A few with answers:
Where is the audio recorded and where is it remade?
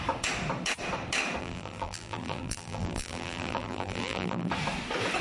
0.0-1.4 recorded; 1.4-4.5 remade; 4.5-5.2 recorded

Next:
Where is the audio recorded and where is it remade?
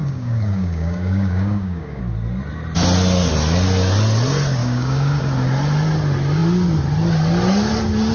0.0-2.0 remade; 2.0-4.6 recorded; 4.6-5.2 remade; 5.2-8.1 recorded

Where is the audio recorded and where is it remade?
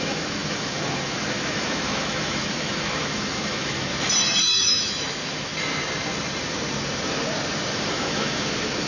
0.0-3.9 remade; 3.9-4.4 recorded; 4.4-5.5 remade; 5.5-7.9 recorded; 7.9-8.9 remade